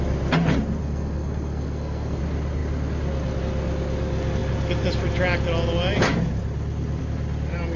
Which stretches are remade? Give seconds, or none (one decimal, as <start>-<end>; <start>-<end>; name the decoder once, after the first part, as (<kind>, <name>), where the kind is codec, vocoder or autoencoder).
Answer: 0.8-2.2 (codec, SNAC)